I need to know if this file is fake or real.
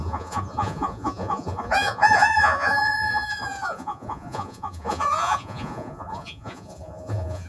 fake